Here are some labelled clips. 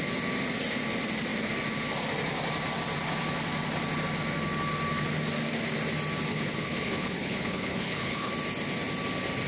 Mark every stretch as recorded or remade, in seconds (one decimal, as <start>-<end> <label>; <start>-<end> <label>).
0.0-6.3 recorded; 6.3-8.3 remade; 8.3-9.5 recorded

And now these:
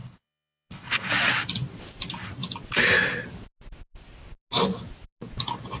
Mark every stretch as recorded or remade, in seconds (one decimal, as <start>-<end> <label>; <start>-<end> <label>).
0.0-1.1 remade; 1.1-5.8 recorded

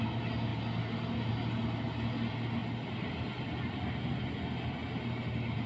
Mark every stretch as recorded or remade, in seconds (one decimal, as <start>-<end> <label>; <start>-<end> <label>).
0.0-5.7 recorded